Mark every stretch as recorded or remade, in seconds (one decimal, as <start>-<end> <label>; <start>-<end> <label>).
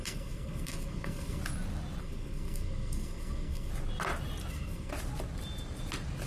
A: 0.0-1.4 remade; 1.4-2.0 recorded; 2.0-3.7 remade; 3.7-4.5 recorded; 4.5-4.9 remade; 4.9-6.3 recorded